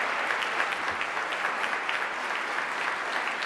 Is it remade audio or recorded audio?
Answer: recorded